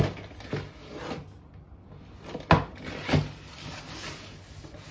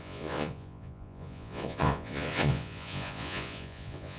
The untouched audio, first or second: first